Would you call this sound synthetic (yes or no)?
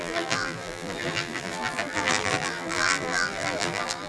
yes